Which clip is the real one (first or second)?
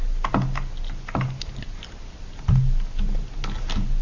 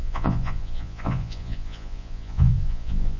first